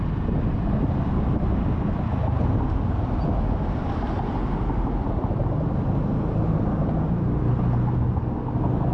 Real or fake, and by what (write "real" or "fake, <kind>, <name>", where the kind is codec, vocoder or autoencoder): real